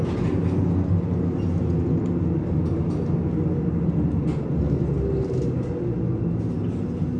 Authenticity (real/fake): real